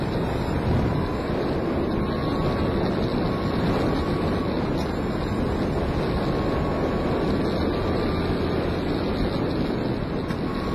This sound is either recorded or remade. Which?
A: recorded